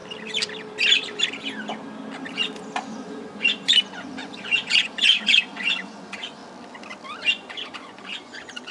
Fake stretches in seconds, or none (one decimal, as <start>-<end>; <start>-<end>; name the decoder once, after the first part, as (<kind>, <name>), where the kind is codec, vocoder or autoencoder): 2.8-6.4 (vocoder, Vocos); 7.3-8.7

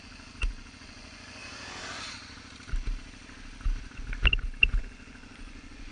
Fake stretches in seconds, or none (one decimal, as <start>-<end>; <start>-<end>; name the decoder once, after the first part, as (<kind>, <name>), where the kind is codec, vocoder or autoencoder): 0.0-1.4 (vocoder, Vocos); 4.8-5.9

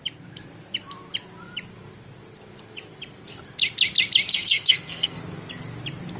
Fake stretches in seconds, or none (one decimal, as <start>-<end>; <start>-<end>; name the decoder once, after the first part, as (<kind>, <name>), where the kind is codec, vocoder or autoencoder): 4.3-5.2 (codec, SNAC)

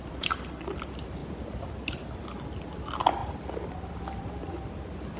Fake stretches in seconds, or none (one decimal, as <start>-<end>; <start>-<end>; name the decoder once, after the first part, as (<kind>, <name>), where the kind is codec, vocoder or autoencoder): none

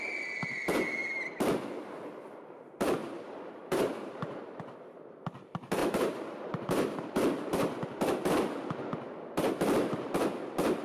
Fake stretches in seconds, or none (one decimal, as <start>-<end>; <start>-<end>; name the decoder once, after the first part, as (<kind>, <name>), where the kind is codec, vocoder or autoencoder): 3.0-4.6 (vocoder, BigVGAN v2); 5.8-7.0

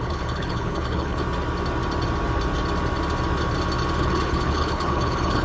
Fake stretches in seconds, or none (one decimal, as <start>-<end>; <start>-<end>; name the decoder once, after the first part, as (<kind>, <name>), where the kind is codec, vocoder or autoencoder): 0.0-1.2 (codec, HILCodec); 4.0-5.4